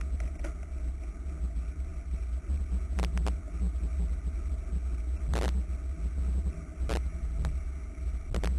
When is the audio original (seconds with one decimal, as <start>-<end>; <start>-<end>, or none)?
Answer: 0.0-8.6